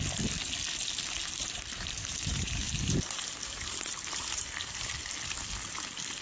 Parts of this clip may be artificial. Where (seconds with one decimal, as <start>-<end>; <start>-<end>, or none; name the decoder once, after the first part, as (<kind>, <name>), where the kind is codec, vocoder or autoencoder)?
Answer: 1.4-4.9 (vocoder, BigVGAN v2)